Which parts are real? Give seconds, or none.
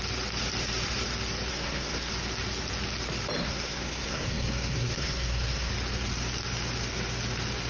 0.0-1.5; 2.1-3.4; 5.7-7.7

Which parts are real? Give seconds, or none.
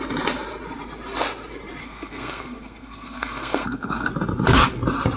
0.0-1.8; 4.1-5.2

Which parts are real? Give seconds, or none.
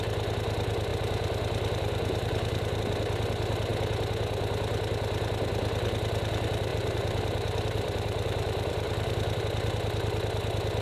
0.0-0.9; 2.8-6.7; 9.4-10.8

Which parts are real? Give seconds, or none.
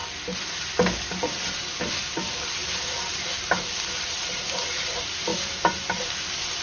0.0-6.6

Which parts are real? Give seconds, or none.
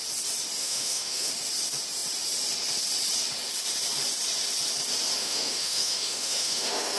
0.0-0.6; 1.3-5.2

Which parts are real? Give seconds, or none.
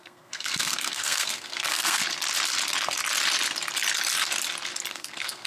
2.0-4.9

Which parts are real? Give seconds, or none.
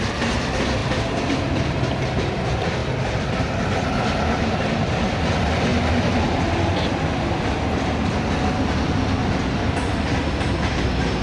0.0-0.8; 1.9-11.2